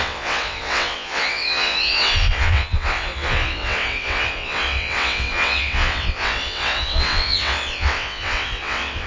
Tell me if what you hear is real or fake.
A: fake